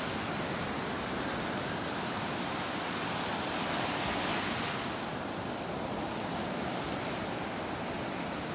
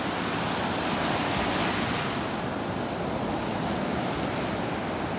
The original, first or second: second